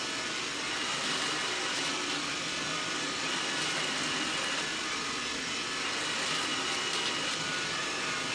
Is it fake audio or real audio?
real